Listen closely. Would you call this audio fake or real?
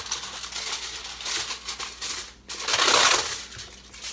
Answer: real